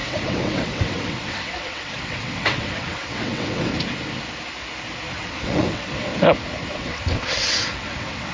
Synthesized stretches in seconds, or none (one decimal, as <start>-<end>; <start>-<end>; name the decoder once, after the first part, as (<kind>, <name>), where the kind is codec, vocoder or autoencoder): 0.0-3.7 (vocoder, WaveNeXt); 5.1-6.1; 6.7-8.3